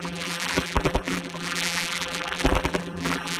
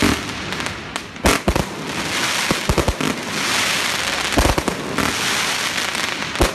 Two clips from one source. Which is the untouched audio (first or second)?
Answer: second